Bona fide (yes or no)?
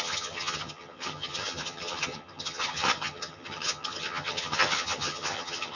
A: no